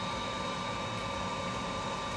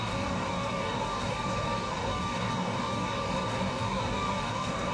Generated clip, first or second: second